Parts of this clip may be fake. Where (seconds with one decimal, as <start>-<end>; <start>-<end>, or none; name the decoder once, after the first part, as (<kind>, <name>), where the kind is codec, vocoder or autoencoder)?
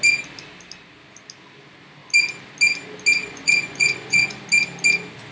3.2-4.4 (vocoder, Vocos)